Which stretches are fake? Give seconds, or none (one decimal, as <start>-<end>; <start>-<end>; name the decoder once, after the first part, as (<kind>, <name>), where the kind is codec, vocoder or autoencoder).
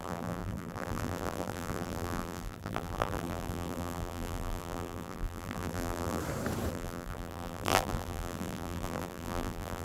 0.0-6.2 (vocoder, BigVGAN v2); 6.7-9.8